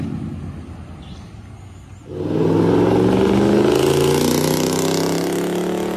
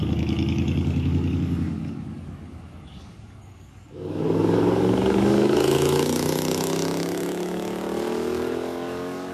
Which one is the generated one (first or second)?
second